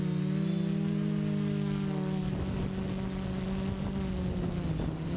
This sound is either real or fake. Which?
real